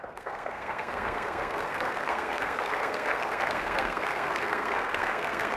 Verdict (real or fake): fake